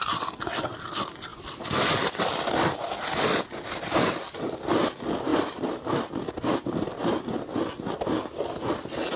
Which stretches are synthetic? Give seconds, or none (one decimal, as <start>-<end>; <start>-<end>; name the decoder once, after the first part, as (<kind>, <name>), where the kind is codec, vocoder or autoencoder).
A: 1.3-3.4 (vocoder, BigVGAN v2); 5.3-7.2